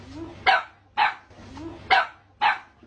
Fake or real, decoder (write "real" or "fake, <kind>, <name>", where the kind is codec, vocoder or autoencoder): real